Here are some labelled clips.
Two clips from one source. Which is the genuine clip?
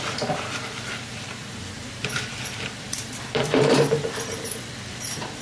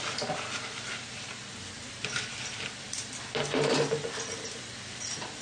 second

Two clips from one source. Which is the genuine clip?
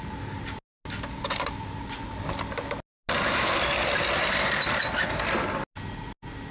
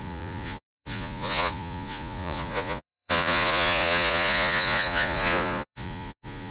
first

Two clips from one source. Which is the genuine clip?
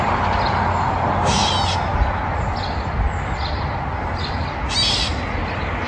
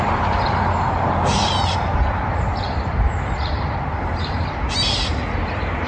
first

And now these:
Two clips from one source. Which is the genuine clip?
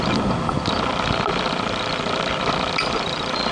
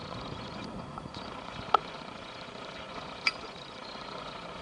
first